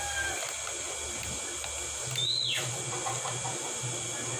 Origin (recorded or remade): recorded